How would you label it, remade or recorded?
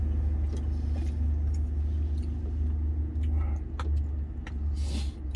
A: recorded